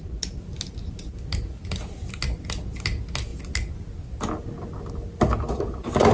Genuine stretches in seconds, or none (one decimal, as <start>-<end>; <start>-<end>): 0.0-6.1